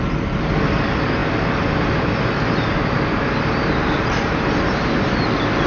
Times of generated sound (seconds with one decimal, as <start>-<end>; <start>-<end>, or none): none